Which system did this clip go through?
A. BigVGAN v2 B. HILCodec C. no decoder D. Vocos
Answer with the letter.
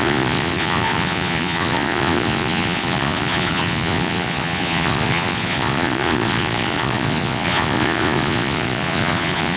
D